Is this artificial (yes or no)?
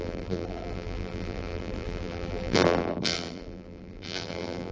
yes